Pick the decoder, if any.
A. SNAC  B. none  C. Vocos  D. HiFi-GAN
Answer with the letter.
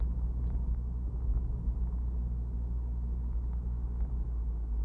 B